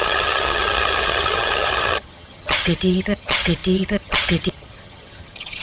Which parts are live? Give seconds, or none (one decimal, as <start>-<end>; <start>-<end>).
none